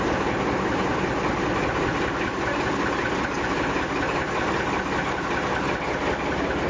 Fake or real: real